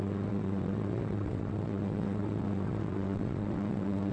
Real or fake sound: fake